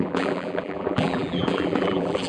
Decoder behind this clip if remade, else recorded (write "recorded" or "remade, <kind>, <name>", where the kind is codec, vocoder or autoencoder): remade, vocoder, BigVGAN v2